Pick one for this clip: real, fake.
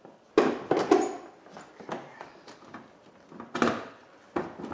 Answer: real